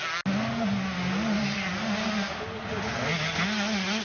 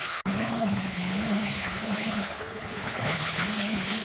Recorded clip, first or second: first